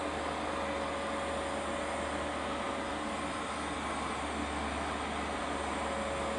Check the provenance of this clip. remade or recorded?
recorded